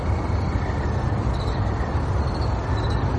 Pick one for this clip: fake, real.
real